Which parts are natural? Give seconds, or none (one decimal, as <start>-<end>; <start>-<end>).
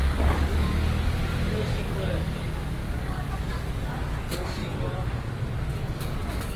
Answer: 1.2-1.7; 4.6-5.7